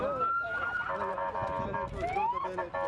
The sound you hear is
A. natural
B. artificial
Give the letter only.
A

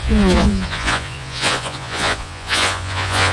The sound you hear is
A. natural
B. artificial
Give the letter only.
B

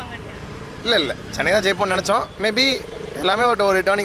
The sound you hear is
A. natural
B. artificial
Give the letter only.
B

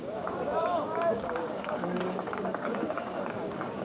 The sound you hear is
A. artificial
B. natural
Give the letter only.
A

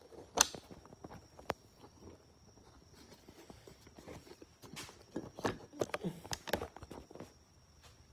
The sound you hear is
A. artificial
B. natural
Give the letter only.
B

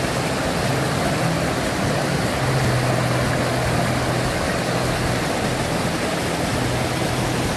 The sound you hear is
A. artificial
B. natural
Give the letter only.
B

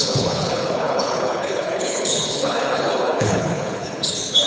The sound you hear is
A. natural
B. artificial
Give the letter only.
B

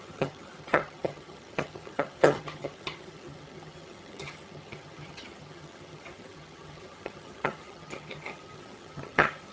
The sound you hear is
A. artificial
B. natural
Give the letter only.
A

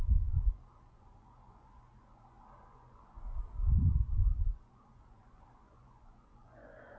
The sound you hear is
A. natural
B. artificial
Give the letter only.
B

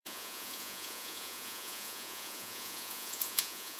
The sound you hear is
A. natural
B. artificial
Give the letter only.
B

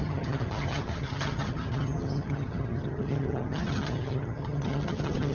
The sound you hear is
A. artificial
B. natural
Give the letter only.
A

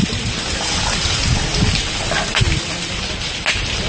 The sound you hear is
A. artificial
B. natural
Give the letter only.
B